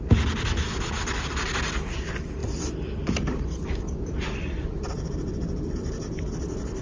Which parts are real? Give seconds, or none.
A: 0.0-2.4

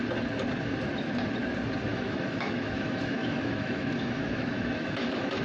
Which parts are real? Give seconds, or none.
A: 0.0-1.9

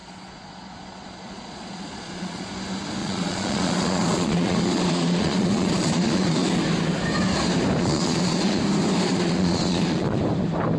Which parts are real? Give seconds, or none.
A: 2.5-3.0; 6.6-7.8; 8.6-9.1; 10.2-10.8